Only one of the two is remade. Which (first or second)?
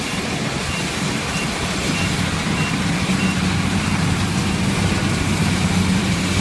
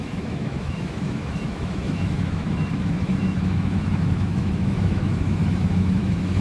second